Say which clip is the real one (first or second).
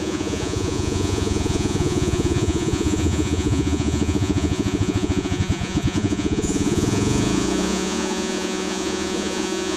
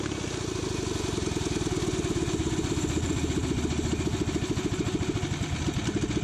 second